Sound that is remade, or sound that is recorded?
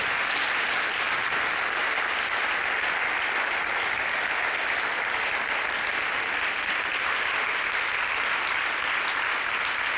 recorded